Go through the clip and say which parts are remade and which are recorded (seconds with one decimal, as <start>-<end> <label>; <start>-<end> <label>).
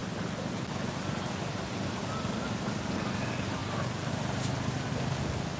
0.0-5.6 recorded